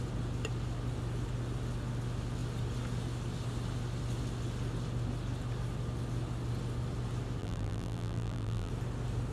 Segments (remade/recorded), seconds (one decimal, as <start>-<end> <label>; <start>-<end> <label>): 0.0-7.4 recorded; 7.4-8.7 remade; 8.7-9.3 recorded